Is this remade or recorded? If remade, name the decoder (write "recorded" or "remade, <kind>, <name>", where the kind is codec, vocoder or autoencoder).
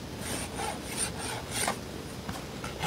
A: recorded